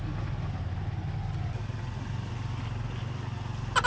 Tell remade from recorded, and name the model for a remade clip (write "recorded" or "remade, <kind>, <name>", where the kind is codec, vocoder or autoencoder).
recorded